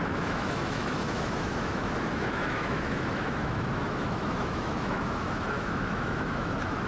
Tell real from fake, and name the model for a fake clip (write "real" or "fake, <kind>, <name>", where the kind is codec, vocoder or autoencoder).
fake, autoencoder, DAC-VAE